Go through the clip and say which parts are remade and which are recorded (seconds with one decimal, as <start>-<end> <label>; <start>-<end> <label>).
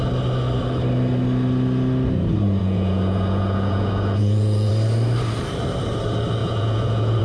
0.0-2.6 recorded; 2.6-4.7 remade; 4.7-6.4 recorded; 6.4-7.2 remade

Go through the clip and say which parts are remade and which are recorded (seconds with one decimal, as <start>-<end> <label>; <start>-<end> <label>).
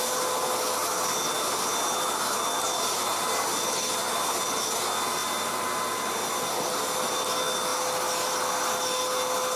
0.0-9.6 recorded